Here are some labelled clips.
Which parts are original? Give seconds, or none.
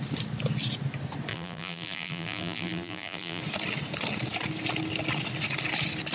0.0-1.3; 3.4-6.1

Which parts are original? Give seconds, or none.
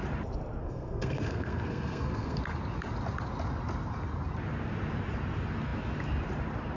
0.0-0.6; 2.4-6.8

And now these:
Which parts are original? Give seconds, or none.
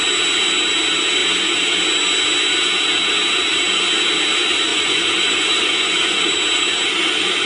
0.0-4.7; 6.3-7.4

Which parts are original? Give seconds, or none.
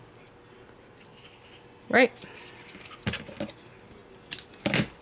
0.0-5.0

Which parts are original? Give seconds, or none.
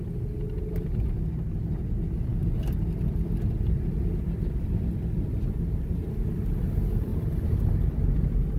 0.0-8.6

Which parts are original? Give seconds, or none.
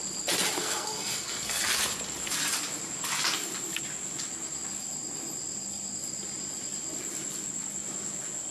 0.0-0.6; 1.6-8.5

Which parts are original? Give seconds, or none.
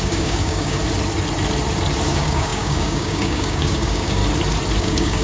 0.8-2.1; 4.2-4.8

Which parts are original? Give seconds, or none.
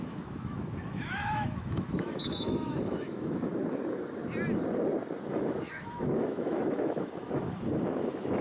3.5-5.3